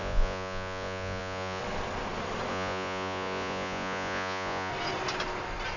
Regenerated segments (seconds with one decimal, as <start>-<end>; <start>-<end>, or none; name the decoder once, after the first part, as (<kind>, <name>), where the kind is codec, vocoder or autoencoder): 0.0-1.6 (vocoder, Vocos); 2.5-4.7